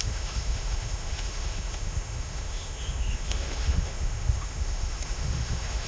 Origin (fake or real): fake